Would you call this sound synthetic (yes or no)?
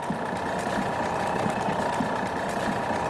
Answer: yes